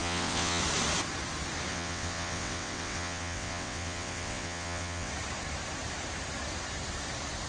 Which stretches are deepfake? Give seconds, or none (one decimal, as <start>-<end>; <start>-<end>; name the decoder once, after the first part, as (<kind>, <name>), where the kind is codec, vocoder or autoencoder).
0.0-0.6 (vocoder, WaveNeXt); 1.7-5.1